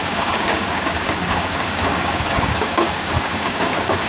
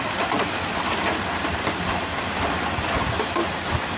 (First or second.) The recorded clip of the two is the second